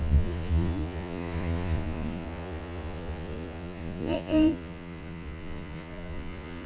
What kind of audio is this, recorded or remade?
remade